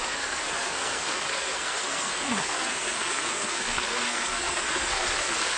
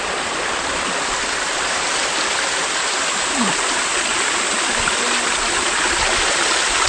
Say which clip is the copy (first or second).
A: first